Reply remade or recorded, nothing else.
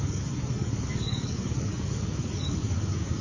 remade